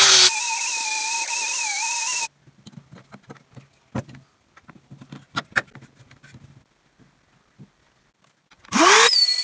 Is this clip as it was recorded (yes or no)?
yes